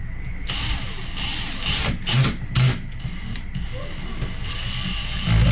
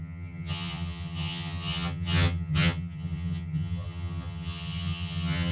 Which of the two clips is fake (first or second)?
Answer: second